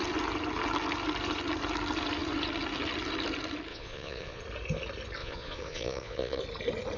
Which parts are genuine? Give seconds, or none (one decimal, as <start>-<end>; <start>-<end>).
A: 0.0-3.7; 4.4-5.2; 6.4-7.0

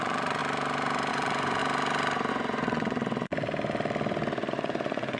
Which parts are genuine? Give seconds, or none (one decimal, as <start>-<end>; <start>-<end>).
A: 0.4-1.1; 1.6-2.3; 3.3-4.5

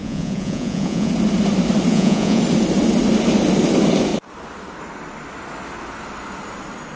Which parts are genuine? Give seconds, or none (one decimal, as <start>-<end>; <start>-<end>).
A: 1.1-1.9; 2.4-7.0

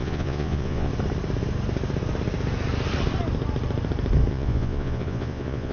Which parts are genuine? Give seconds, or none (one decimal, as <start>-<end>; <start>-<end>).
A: 0.9-4.3

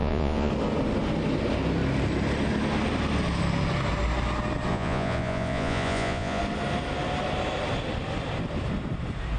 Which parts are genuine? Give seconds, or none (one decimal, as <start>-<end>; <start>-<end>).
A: 0.5-4.7; 6.4-9.4

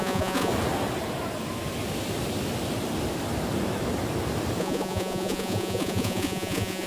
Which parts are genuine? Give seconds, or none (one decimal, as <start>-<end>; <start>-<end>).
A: 0.5-4.6